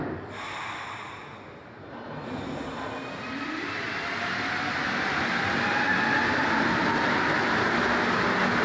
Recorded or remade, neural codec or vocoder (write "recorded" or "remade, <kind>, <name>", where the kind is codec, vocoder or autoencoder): recorded